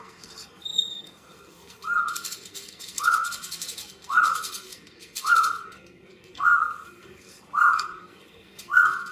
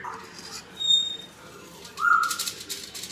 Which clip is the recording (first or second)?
second